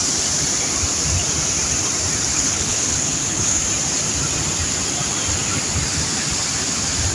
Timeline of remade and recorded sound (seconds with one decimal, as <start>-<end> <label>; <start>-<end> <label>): 0.0-2.3 recorded; 2.3-3.6 remade; 3.6-7.1 recorded